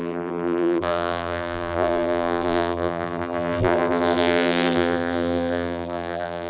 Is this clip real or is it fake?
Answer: fake